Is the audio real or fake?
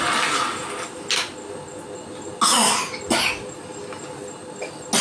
real